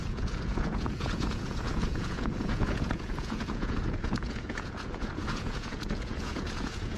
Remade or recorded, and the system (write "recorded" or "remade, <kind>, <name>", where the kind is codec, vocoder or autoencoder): remade, vocoder, Vocos